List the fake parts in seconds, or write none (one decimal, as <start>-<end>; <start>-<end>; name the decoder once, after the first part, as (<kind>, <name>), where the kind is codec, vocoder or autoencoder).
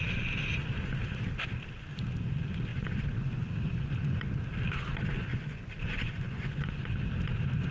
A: 2.7-4.2 (vocoder, Vocos); 5.3-6.8